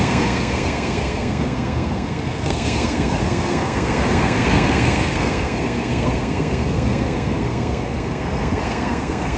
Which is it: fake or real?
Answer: fake